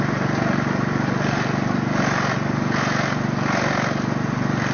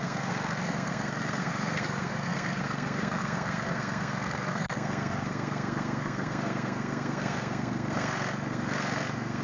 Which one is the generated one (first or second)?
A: second